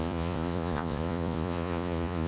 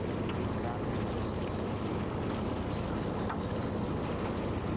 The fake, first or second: first